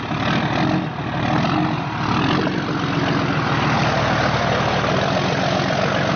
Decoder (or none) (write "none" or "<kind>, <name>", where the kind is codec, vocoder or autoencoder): none